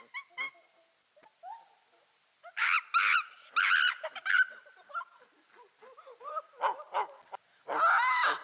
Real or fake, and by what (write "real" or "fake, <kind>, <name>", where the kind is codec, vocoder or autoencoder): real